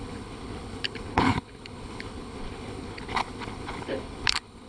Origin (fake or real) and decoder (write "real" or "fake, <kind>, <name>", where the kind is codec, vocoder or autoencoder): fake, codec, HILCodec